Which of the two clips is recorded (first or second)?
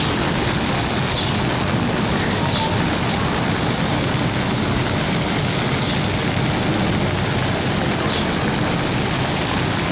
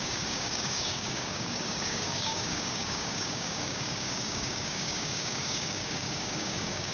first